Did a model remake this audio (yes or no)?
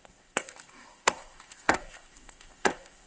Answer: yes